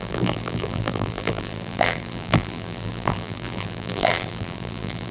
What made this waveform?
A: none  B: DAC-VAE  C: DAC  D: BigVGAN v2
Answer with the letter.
D